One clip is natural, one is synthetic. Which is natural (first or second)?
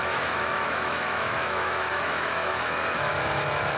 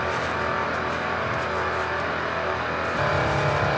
second